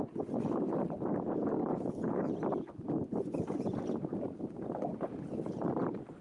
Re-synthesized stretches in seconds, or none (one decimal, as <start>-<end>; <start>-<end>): 1.6-2.3